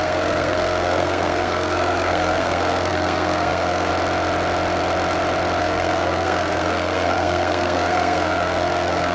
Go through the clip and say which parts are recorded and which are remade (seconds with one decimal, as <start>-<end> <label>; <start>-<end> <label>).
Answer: 0.0-3.9 remade; 3.9-5.6 recorded; 5.6-9.1 remade